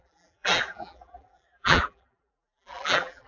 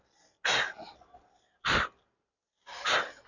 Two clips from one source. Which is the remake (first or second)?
first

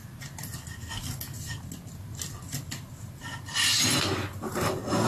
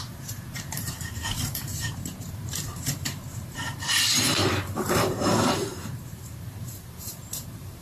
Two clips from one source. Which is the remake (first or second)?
second